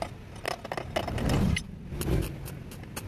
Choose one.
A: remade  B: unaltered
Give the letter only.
B